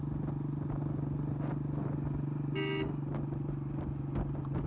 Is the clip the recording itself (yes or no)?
yes